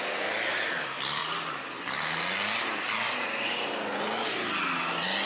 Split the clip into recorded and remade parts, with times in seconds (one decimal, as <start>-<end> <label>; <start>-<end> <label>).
0.0-5.3 recorded